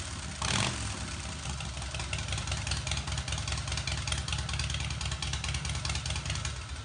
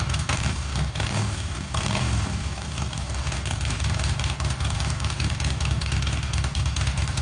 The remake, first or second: second